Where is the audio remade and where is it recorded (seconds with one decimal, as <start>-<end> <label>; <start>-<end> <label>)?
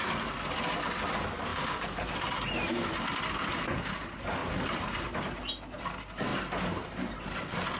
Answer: 0.0-1.5 recorded; 1.5-3.2 remade; 3.2-4.4 recorded; 4.4-5.8 remade; 5.8-6.3 recorded; 6.3-7.8 remade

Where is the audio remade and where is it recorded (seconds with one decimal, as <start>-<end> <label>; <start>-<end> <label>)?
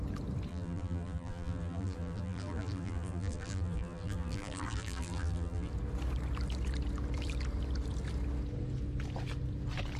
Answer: 0.0-0.5 recorded; 0.5-5.7 remade; 5.7-10.0 recorded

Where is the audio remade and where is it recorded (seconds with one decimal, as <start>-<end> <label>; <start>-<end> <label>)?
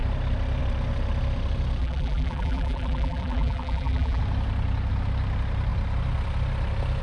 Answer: 0.0-1.8 recorded; 1.8-4.2 remade; 4.2-7.0 recorded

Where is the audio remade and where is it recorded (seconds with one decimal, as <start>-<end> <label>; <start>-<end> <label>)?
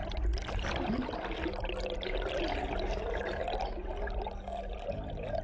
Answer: 0.0-5.4 recorded